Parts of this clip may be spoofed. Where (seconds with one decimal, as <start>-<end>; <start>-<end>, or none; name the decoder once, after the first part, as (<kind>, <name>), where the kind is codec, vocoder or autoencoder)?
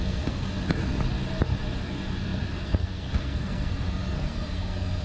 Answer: 0.0-0.5 (codec, SNAC); 1.8-5.0